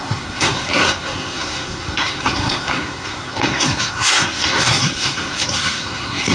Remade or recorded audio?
remade